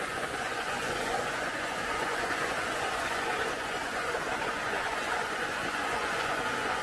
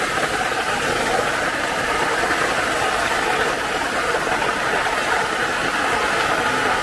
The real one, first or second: second